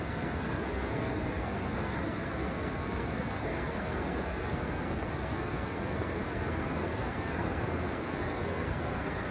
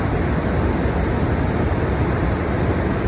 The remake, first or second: first